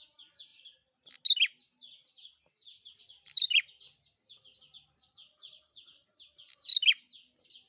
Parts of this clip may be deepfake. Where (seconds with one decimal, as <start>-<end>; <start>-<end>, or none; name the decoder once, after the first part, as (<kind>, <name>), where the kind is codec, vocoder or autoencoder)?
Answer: 0.0-0.5 (vocoder, BigVGAN v2); 3.0-7.7